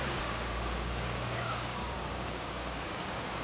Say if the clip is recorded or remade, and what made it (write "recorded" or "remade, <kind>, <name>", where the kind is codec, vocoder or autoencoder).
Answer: remade, codec, DAC